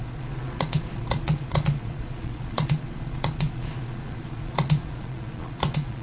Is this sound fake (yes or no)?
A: yes